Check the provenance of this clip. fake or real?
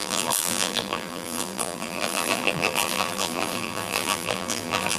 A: fake